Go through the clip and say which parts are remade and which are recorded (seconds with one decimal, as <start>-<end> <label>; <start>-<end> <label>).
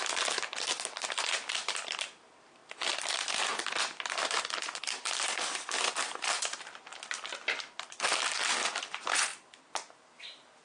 0.0-9.3 recorded; 9.3-10.2 remade; 10.2-10.6 recorded